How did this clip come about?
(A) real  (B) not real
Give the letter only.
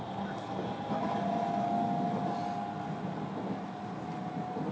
A